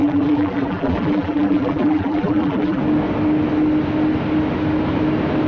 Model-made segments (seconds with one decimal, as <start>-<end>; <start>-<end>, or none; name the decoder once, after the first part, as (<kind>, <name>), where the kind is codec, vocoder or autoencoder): 0.0-2.8 (vocoder, BigVGAN v2)

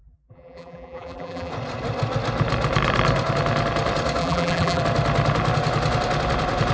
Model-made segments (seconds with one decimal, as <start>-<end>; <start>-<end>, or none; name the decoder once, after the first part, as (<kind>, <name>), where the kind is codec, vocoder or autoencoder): 0.0-1.5 (vocoder, BigVGAN v2); 4.2-4.8